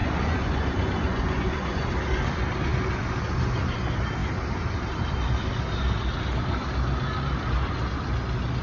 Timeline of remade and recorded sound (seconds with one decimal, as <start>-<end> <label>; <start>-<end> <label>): 0.0-1.9 remade; 1.9-8.6 recorded